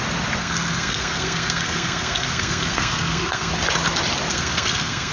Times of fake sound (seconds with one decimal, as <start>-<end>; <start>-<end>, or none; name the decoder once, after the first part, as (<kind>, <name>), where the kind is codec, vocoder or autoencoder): 0.4-3.5 (codec, SNAC); 4.3-5.1